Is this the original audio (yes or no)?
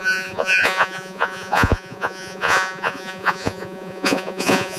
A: no